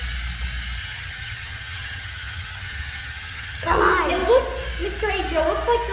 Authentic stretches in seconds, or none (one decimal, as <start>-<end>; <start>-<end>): 0.0-0.8; 3.8-5.9